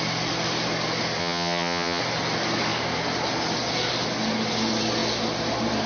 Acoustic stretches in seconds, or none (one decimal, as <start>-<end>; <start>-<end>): 0.0-1.2; 2.0-5.9